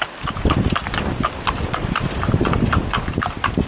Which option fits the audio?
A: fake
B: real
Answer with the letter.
A